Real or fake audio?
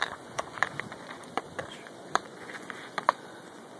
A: fake